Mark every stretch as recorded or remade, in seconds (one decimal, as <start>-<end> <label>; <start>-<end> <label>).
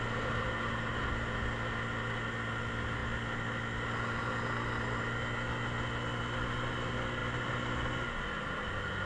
0.0-9.1 recorded